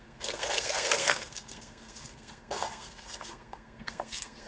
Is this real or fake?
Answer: fake